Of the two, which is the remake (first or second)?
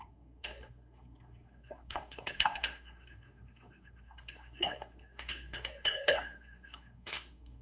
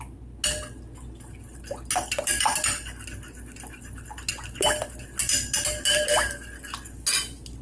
first